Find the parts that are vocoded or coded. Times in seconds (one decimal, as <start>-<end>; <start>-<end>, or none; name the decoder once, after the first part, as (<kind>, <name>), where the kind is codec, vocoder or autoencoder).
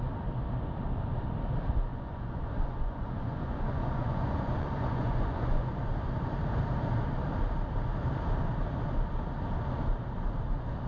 1.9-5.9 (vocoder, Vocos)